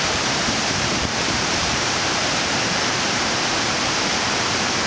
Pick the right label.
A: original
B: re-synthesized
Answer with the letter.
B